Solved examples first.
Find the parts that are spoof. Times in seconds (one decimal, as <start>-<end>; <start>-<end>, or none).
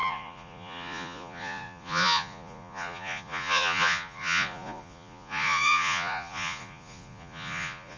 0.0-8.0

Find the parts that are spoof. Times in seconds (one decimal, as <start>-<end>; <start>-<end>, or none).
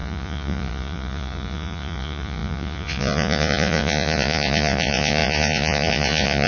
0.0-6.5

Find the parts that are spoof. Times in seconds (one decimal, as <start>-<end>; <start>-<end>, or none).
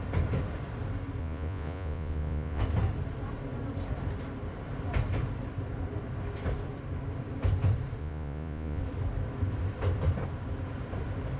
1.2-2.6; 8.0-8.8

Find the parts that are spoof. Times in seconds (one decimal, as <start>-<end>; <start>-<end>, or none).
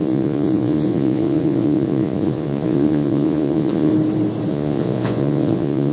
0.0-3.9; 4.5-5.9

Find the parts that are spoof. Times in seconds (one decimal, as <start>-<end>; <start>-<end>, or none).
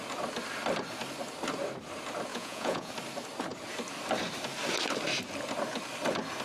2.3-2.9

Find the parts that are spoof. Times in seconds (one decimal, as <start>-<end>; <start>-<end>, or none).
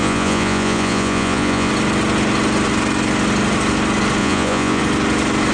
0.0-1.7; 4.2-4.8